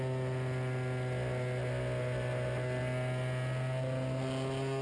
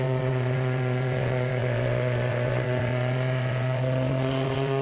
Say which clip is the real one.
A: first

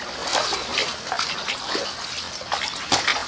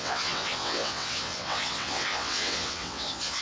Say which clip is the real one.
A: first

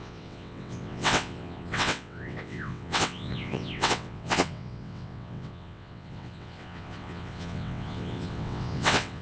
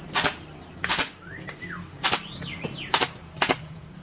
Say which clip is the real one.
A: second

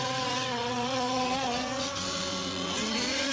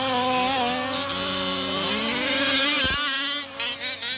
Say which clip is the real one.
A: second